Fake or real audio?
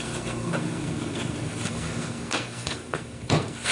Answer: fake